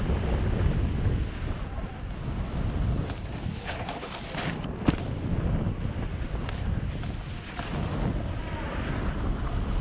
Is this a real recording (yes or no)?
yes